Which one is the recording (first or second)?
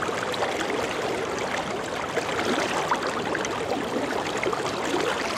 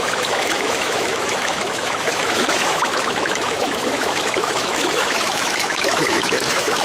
first